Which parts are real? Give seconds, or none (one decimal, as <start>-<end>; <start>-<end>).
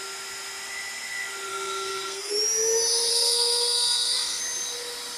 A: 0.0-1.5; 2.3-3.1; 4.4-5.2